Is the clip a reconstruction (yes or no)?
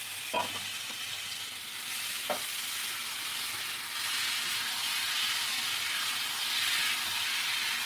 no